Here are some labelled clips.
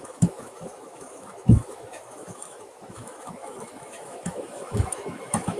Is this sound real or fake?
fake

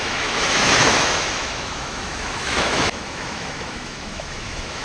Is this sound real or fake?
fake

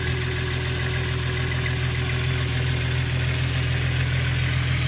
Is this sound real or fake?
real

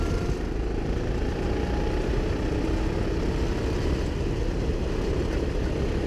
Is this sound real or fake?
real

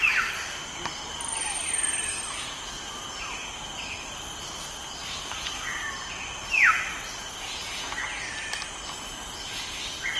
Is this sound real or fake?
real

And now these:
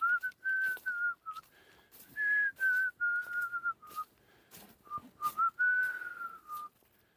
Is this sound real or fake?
real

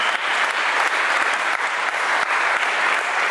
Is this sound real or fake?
real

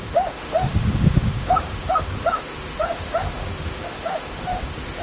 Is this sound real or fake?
fake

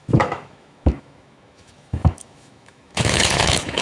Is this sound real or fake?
fake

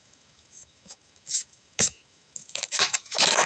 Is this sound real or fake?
fake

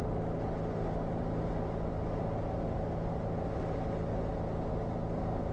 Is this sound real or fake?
real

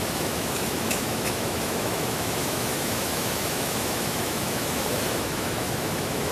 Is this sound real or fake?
fake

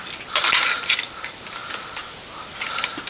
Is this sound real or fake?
real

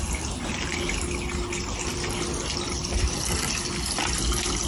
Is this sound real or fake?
real